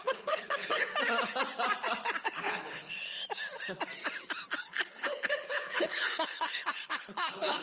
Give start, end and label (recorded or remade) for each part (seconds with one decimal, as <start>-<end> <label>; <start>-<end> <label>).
0.0-0.9 remade; 0.9-2.2 recorded; 2.2-3.2 remade; 3.2-4.6 recorded; 4.6-7.6 remade